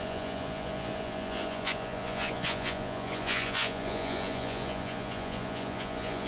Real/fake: fake